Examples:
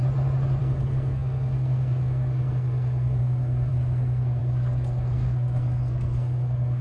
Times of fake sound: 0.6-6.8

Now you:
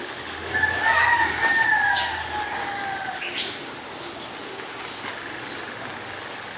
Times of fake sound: none